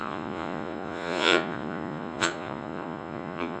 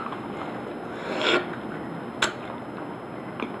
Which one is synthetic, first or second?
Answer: first